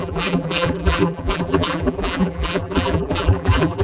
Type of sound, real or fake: fake